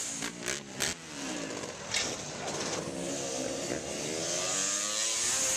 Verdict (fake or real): real